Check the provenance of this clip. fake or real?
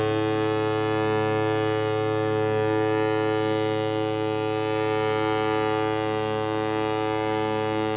real